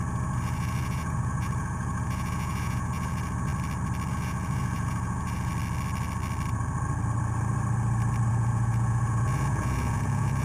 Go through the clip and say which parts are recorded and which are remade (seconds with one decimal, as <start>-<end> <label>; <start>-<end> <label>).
0.0-3.5 remade; 3.5-4.1 recorded; 4.1-5.5 remade; 5.5-8.3 recorded; 8.3-10.4 remade